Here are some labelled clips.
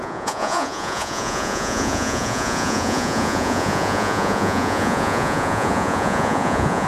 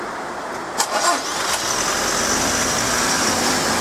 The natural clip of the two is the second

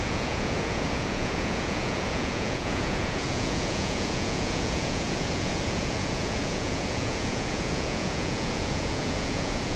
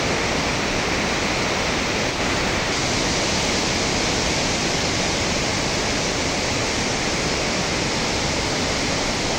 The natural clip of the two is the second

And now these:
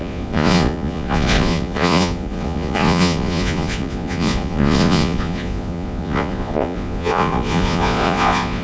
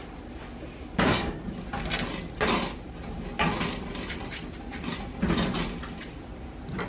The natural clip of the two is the second